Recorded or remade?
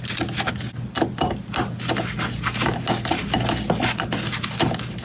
recorded